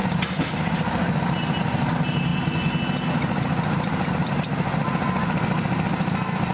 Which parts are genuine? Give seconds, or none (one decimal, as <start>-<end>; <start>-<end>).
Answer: 0.0-6.5